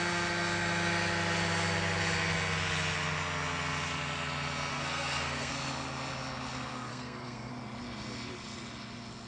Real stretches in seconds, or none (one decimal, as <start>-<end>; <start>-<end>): 0.0-4.7; 5.5-6.9; 7.5-9.3